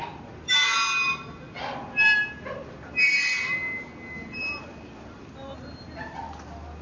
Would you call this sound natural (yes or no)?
yes